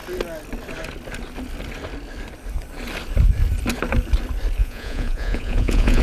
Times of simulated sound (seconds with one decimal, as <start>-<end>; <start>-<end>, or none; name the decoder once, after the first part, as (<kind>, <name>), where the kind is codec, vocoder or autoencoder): 4.6-6.0 (vocoder, Vocos)